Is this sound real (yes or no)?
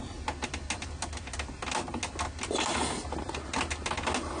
yes